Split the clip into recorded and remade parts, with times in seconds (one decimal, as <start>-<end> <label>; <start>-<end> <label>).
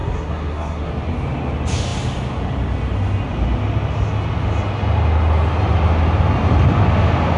0.0-0.9 remade; 0.9-7.4 recorded